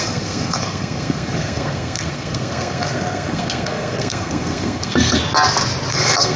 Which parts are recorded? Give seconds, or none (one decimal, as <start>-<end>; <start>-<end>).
5.2-5.9